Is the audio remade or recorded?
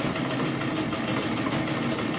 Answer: recorded